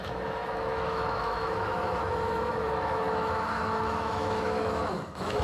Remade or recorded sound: remade